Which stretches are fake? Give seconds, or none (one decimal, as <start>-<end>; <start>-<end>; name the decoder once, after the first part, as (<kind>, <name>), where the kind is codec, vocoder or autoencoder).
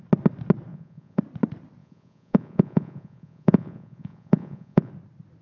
0.7-1.2 (vocoder, Vocos); 1.8-4.9